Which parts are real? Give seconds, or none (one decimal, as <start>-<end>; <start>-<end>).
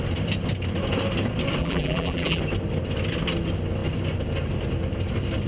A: 0.0-1.6; 2.4-5.5